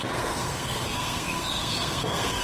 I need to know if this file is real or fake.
fake